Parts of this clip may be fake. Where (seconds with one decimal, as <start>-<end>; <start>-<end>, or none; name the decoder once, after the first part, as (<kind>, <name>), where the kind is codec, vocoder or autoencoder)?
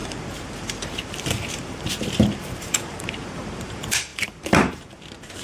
0.0-5.4 (vocoder, BigVGAN v2)